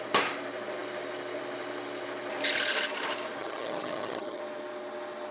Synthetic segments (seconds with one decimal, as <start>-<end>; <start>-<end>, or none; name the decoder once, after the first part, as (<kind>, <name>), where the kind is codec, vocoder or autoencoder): 3.4-4.4 (vocoder, HiFi-GAN)